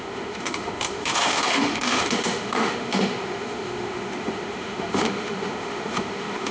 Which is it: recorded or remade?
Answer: remade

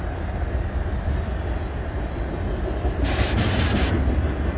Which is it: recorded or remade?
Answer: recorded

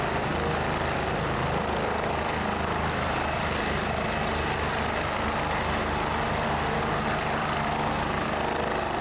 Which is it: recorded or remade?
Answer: recorded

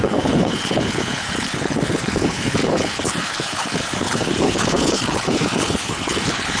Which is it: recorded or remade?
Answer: remade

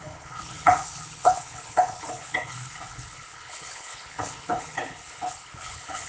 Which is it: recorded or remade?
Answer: remade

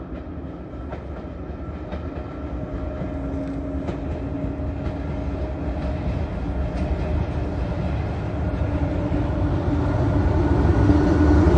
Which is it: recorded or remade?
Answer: recorded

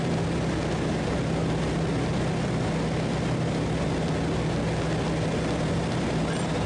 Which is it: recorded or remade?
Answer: recorded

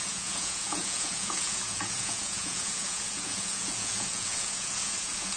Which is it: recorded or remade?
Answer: remade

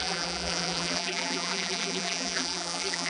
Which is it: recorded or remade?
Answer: remade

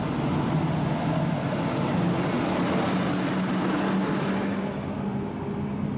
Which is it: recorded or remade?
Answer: recorded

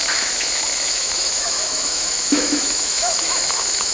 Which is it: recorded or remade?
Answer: remade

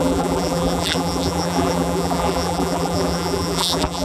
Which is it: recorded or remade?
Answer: remade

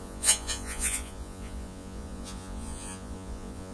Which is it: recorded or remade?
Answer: remade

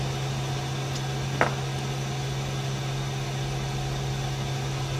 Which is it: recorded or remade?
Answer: recorded